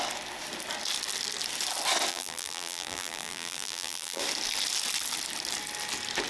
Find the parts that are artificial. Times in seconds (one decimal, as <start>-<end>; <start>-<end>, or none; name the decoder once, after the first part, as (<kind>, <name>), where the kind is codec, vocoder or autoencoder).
2.1-4.2 (vocoder, BigVGAN v2)